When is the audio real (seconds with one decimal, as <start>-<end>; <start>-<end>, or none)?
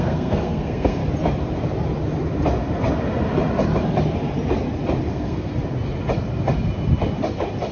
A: 1.0-5.1; 5.5-7.7